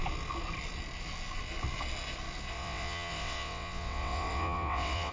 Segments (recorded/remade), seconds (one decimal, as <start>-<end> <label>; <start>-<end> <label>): 0.0-2.5 recorded; 2.5-5.1 remade